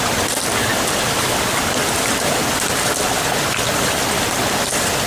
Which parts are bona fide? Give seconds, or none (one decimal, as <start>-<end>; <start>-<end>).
0.0-5.1